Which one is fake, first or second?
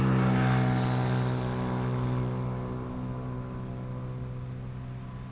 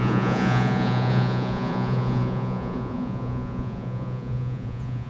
second